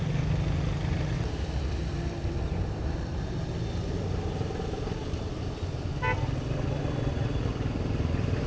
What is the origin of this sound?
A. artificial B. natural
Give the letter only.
B